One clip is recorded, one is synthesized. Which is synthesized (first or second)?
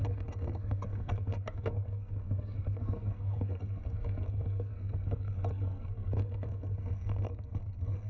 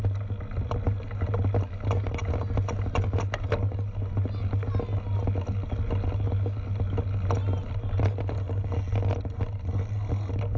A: first